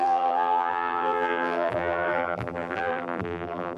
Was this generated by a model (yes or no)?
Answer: yes